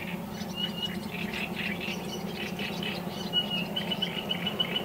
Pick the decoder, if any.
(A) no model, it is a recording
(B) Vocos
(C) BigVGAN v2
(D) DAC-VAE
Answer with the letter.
A